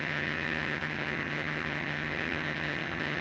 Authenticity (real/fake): fake